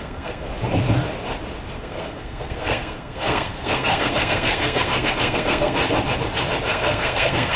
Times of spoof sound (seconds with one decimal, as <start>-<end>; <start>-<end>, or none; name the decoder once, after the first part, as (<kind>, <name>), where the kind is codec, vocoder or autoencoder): 0.0-0.5 (codec, SNAC); 1.8-5.8; 6.7-7.6